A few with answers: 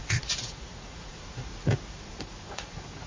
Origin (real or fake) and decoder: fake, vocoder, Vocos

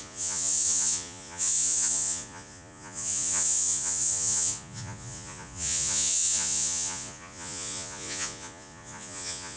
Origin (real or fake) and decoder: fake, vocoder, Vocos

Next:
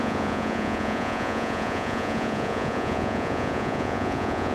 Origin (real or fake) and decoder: fake, vocoder, Vocos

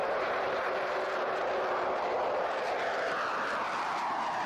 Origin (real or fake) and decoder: real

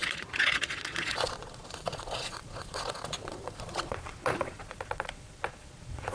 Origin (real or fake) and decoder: fake, vocoder, Vocos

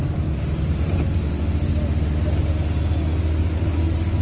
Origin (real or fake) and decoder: real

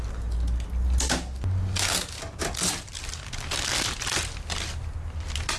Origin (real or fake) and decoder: real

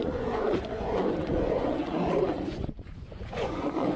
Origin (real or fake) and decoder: fake, vocoder, Vocos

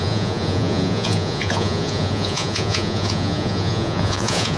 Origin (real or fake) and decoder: fake, vocoder, Vocos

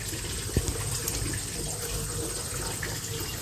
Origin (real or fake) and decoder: real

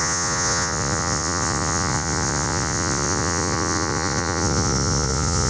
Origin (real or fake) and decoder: fake, vocoder, Vocos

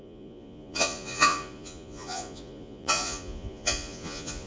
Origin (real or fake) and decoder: fake, vocoder, Vocos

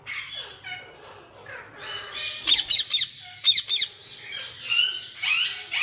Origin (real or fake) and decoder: real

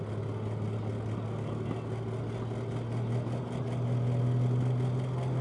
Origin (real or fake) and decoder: real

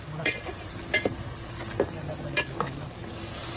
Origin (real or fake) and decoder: real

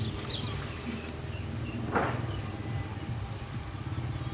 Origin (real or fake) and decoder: real